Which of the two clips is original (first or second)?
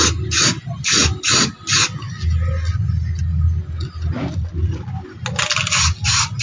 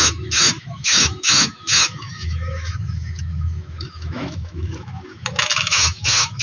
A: first